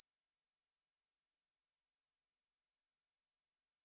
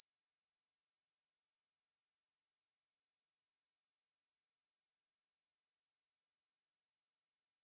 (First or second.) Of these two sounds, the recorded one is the second